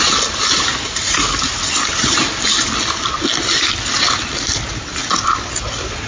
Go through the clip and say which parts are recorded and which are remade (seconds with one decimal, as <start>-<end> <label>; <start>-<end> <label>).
0.0-6.1 recorded